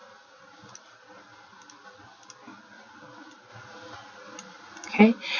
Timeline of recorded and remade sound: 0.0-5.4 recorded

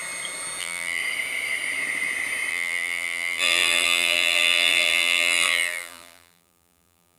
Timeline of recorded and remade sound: 0.0-0.6 recorded; 0.6-1.0 remade; 1.0-2.5 recorded; 2.5-7.2 remade

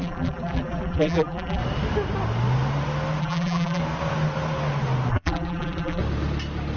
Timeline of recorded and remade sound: 0.0-1.6 remade; 1.6-3.2 recorded; 3.2-3.8 remade; 3.8-5.1 recorded; 5.1-6.0 remade; 6.0-6.8 recorded

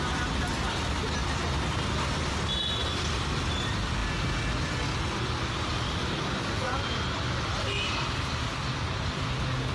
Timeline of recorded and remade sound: 0.0-9.7 recorded

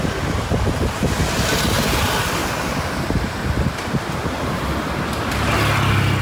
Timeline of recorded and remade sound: 0.0-2.4 recorded; 2.4-5.5 remade; 5.5-6.2 recorded

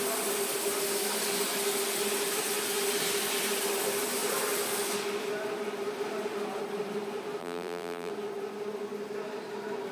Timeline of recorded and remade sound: 0.0-7.4 recorded; 7.4-8.1 remade; 8.1-9.9 recorded

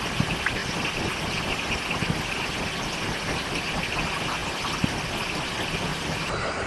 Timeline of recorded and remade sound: 0.0-0.6 recorded; 0.6-2.4 remade; 2.4-4.4 recorded; 4.4-5.0 remade; 5.0-5.9 recorded; 5.9-6.7 remade

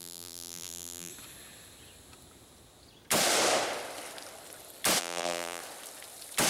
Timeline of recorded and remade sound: 0.0-1.1 remade; 1.1-5.0 recorded; 5.0-5.6 remade; 5.6-6.5 recorded